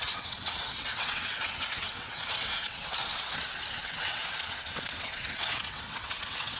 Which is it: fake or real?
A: fake